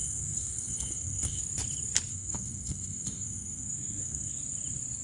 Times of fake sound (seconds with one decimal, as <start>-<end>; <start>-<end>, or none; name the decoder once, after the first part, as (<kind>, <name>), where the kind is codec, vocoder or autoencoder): 0.0-1.4 (codec, SNAC); 2.1-4.3